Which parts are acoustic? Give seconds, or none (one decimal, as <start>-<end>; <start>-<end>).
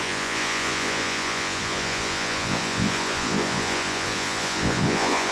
none